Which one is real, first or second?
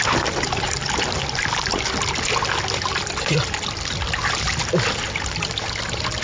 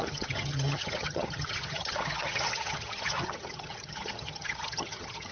first